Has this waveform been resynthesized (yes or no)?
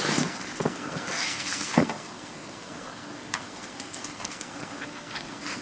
yes